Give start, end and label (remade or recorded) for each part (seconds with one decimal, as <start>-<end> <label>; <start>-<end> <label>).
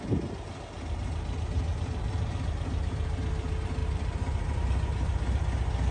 0.0-1.7 recorded; 1.7-2.4 remade; 2.4-3.8 recorded; 3.8-4.5 remade; 4.5-5.9 recorded